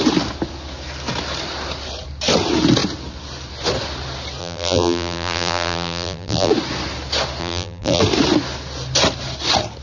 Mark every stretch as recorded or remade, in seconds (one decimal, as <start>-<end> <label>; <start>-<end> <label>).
0.0-4.4 recorded; 4.4-6.5 remade; 6.5-7.4 recorded; 7.4-8.0 remade; 8.0-9.8 recorded